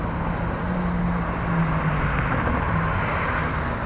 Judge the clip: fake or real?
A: real